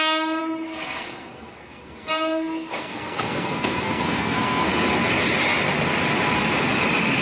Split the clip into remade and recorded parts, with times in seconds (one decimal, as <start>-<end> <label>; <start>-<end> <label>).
0.0-0.4 recorded; 0.4-4.7 remade; 4.7-7.2 recorded